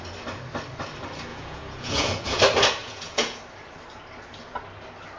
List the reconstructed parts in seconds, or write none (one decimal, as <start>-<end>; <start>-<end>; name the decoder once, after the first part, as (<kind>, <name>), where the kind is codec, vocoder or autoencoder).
1.3-2.4 (vocoder, Vocos); 2.8-3.4